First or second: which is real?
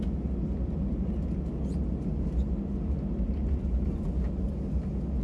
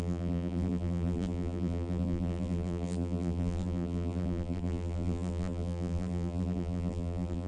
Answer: first